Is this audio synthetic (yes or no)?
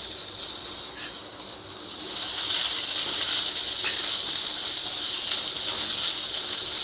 no